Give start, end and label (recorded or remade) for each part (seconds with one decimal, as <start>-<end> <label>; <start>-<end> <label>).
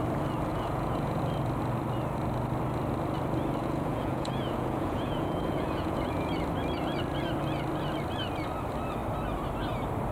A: 0.0-0.5 recorded; 0.5-1.2 remade; 1.2-3.6 recorded; 3.6-6.3 remade; 6.3-10.1 recorded